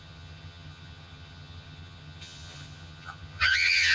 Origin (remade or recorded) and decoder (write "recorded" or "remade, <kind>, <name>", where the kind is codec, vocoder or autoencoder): remade, vocoder, HiFi-GAN